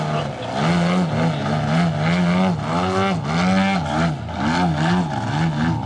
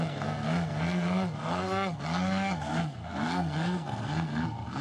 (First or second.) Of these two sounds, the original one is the first